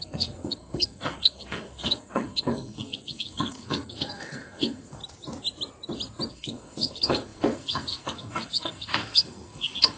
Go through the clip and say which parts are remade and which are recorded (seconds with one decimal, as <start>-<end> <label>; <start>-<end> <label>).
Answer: 0.0-5.0 remade; 5.0-6.3 recorded; 6.3-10.0 remade